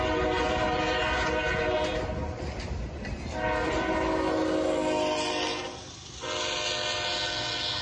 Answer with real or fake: real